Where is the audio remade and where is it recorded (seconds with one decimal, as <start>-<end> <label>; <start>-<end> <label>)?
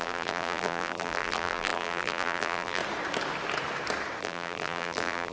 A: 0.0-2.8 remade; 2.8-4.2 recorded; 4.2-5.3 remade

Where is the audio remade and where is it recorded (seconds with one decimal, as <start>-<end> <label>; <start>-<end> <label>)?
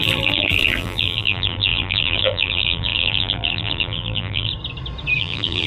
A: 0.0-4.5 remade; 4.5-5.2 recorded; 5.2-5.7 remade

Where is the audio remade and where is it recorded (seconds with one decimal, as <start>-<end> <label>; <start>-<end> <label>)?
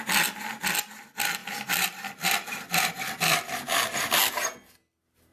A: 0.0-1.4 recorded; 1.4-4.1 remade; 4.1-5.3 recorded